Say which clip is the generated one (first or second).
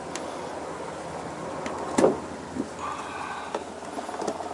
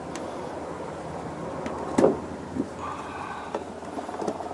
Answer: second